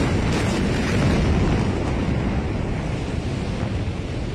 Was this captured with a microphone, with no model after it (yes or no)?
yes